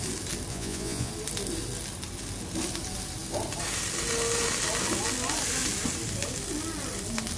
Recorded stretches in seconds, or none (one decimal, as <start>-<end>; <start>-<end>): 0.0-0.5; 1.1-7.4